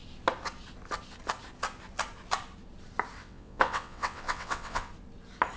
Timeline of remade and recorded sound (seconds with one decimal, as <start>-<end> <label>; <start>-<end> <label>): 0.0-3.2 recorded; 3.2-4.9 remade; 4.9-5.6 recorded